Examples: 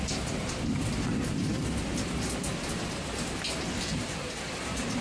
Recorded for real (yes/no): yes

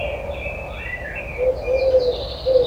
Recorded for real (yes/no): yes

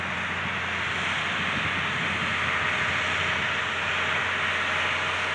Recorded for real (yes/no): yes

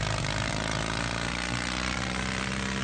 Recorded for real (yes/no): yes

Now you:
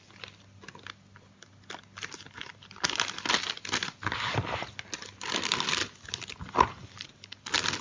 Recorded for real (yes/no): yes